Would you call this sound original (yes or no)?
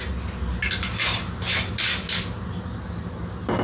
yes